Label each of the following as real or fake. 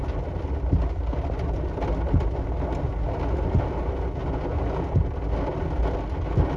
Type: real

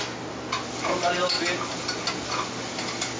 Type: real